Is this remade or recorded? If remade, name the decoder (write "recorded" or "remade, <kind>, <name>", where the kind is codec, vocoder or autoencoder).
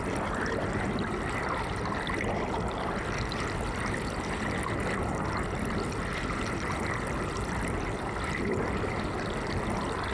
recorded